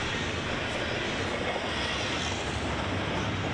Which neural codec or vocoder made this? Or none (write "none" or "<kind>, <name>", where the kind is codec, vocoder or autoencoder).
none